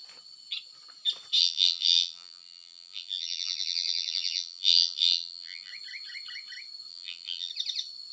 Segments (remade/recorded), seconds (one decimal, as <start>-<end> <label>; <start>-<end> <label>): 0.0-1.4 recorded; 1.4-5.7 remade; 5.7-6.9 recorded; 6.9-7.5 remade; 7.5-8.1 recorded